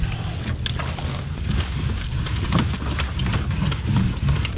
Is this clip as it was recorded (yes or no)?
yes